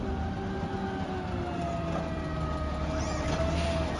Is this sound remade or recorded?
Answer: recorded